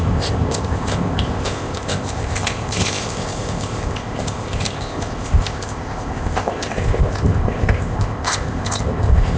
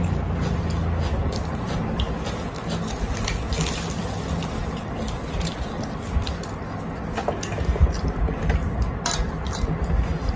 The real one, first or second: second